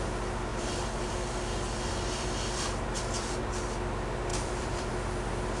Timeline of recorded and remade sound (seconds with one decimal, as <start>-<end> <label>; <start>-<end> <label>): 0.0-0.5 recorded; 0.5-3.4 remade; 3.4-4.3 recorded; 4.3-4.9 remade; 4.9-5.6 recorded